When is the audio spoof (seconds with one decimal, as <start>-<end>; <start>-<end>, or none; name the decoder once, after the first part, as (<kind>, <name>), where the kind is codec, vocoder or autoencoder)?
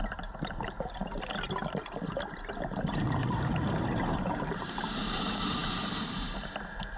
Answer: 3.2-6.4 (vocoder, BigVGAN v2)